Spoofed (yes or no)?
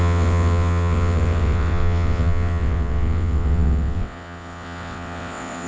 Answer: yes